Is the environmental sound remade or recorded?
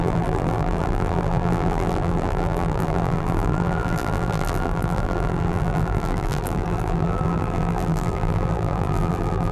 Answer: remade